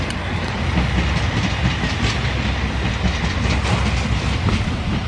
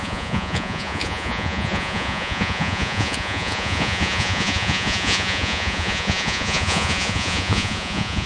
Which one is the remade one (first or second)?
second